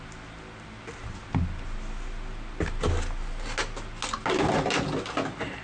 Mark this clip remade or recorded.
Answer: recorded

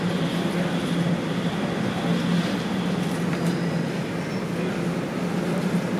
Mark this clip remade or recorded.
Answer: recorded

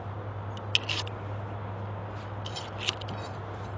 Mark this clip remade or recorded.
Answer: recorded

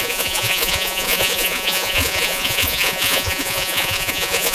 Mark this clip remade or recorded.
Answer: remade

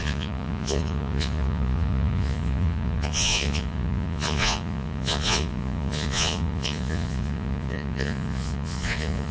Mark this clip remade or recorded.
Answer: remade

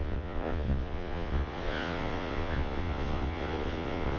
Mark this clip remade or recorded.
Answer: remade